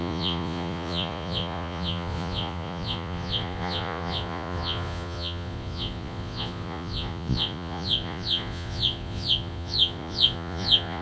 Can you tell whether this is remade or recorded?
remade